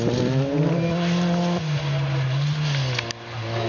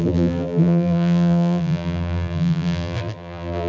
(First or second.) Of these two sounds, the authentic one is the first